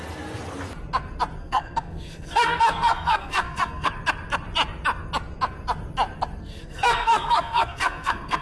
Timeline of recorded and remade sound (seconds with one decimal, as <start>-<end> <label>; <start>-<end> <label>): 0.0-1.4 recorded; 1.4-3.9 remade; 3.9-6.4 recorded; 6.4-8.4 remade